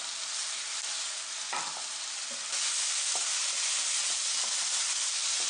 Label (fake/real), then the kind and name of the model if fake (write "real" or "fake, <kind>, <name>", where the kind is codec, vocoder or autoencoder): real